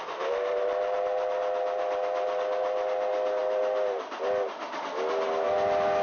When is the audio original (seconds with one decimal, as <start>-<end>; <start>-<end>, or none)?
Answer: 0.0-6.0

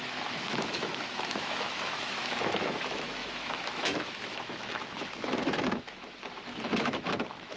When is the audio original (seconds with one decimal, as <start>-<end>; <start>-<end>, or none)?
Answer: none

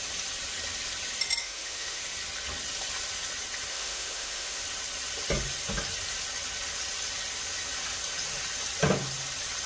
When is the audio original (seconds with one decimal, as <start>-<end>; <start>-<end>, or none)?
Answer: 0.0-1.4; 2.0-3.7; 4.6-9.7

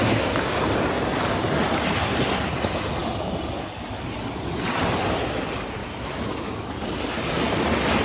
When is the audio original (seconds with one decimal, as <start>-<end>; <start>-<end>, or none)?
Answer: 0.0-5.8; 6.7-8.0

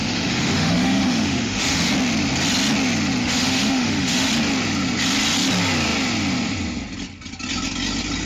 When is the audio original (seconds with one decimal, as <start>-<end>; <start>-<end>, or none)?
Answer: 1.9-3.2; 4.3-8.3